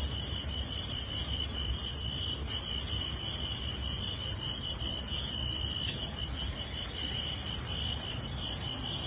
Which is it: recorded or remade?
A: recorded